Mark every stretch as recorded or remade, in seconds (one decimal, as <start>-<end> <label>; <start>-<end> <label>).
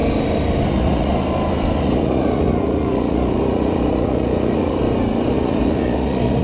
0.0-0.7 recorded; 0.7-1.1 remade; 1.1-1.8 recorded; 1.8-4.8 remade; 4.8-5.3 recorded; 5.3-6.4 remade